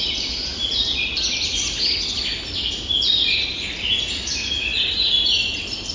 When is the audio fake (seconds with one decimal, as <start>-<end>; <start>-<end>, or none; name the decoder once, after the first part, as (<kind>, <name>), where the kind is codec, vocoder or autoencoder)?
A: none